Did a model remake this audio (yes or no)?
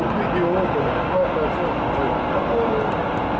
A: no